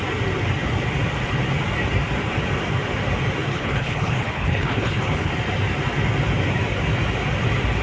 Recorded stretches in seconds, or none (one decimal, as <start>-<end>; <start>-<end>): 0.0-3.5; 5.3-7.8

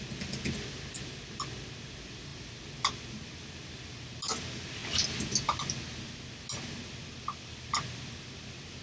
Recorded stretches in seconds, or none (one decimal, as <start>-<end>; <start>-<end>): 0.0-8.8